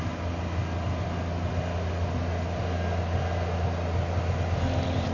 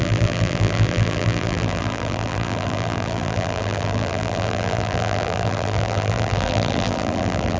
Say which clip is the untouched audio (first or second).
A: first